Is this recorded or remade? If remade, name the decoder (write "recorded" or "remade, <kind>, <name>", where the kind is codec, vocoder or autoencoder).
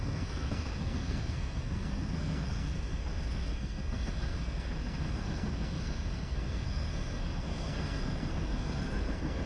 remade, codec, SNAC